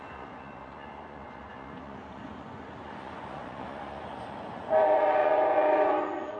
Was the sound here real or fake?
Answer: fake